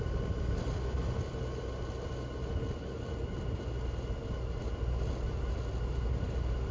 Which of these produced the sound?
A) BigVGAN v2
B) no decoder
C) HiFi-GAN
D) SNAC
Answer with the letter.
B